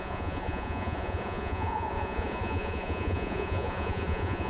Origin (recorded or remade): remade